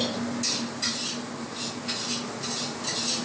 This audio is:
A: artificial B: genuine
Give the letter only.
B